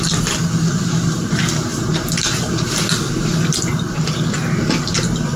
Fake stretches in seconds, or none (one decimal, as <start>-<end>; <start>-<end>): 1.7-2.5